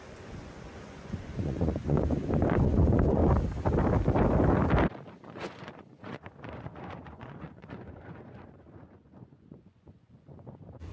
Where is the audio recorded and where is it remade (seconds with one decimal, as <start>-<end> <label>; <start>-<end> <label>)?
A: 0.0-3.2 remade; 3.2-5.1 recorded; 5.1-10.9 remade

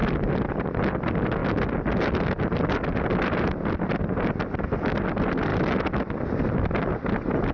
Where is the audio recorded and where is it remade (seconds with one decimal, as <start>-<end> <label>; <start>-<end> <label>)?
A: 0.0-7.5 recorded